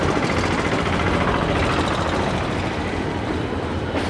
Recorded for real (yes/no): yes